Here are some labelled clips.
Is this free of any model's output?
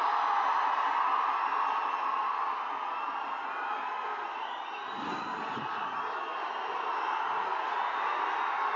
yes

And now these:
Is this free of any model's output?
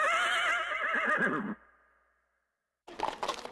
yes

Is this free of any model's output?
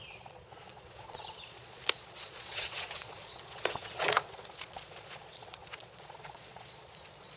no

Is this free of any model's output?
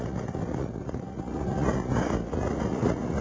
no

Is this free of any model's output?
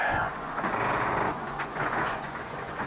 no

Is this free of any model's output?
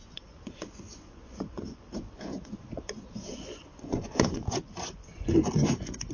no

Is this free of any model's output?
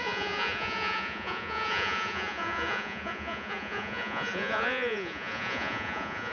no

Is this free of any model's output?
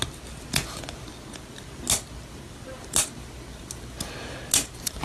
yes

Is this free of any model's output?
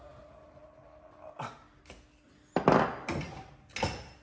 yes